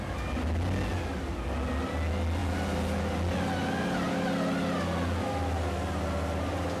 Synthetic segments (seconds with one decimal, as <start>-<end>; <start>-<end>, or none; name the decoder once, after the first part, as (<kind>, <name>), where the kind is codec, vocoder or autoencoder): none